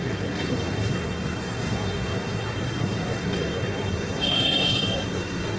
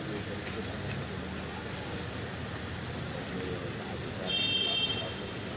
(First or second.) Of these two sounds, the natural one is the second